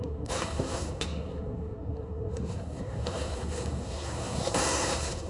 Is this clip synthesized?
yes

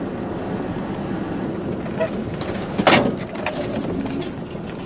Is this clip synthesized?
no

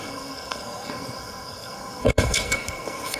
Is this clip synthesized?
yes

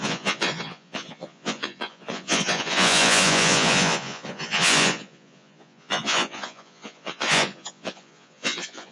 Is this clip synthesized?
yes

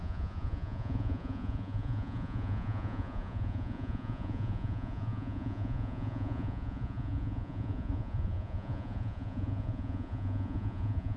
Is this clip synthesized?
yes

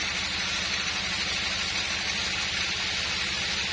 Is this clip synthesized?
yes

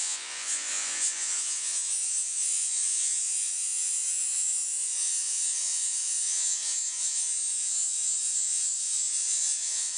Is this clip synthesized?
yes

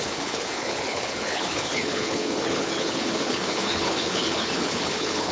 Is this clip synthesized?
yes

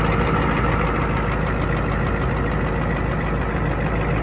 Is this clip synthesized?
no